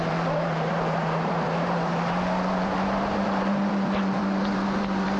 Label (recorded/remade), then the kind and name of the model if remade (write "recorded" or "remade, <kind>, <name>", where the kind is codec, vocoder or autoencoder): remade, vocoder, BigVGAN v2